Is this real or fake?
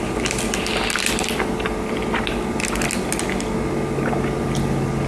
real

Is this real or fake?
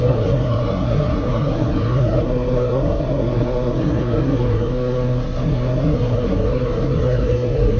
fake